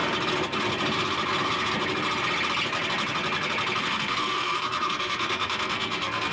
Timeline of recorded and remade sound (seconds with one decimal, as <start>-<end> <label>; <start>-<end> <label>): 0.0-3.8 recorded; 3.8-6.3 remade